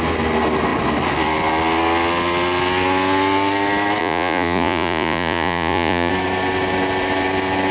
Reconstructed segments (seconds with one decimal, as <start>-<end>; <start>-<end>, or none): 4.0-6.1